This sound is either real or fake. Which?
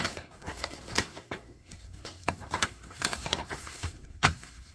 fake